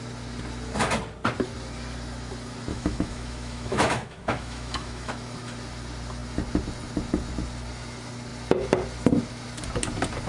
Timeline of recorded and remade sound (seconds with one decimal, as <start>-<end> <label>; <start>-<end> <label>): 0.0-2.7 recorded; 2.7-5.1 remade; 5.1-10.3 recorded